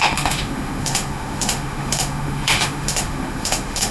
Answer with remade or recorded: remade